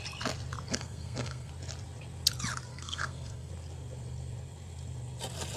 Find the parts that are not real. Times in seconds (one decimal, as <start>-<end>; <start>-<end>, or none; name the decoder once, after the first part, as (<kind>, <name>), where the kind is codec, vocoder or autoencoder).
0.7-1.5 (codec, SNAC); 2.7-3.5